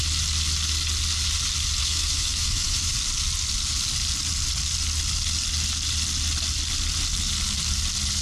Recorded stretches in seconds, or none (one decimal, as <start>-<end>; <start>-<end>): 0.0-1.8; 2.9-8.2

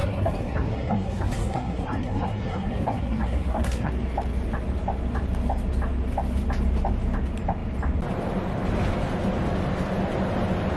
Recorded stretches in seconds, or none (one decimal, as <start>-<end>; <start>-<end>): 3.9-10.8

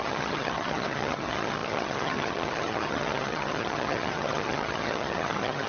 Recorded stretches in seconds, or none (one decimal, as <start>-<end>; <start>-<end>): none